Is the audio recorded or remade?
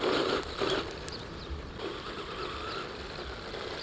recorded